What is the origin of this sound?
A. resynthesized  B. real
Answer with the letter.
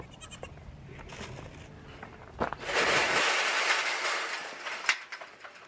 B